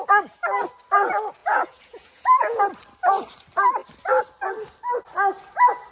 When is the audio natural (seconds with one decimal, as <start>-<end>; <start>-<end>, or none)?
0.0-1.4; 2.6-5.9